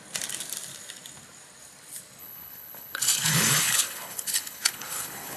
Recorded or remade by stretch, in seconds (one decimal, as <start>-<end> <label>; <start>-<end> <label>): 0.0-2.2 recorded; 2.2-5.4 remade